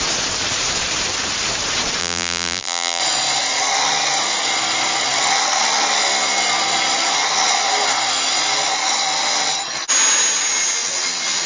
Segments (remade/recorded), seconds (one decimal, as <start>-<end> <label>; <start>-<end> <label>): 0.0-2.0 recorded; 2.0-3.0 remade; 3.0-11.5 recorded